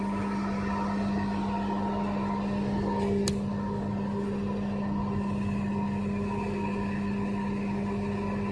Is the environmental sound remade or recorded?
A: recorded